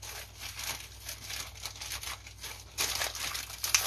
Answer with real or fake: real